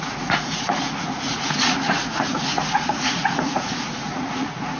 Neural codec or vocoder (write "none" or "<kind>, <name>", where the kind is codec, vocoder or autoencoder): vocoder, Vocos